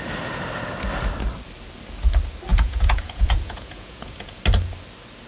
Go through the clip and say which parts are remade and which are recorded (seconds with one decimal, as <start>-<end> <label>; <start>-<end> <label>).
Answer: 0.0-2.5 recorded; 2.5-4.4 remade; 4.4-5.3 recorded